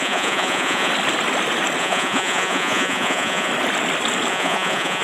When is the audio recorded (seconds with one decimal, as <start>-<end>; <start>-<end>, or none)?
0.9-1.8; 3.5-4.3